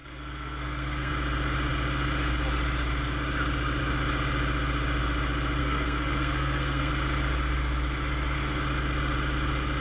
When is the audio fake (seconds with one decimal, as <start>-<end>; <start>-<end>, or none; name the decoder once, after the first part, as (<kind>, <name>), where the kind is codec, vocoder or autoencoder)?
0.0-1.1 (codec, SNAC); 5.6-6.9